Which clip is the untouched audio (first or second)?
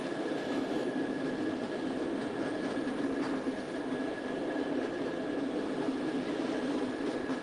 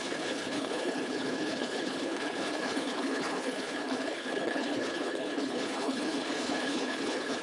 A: first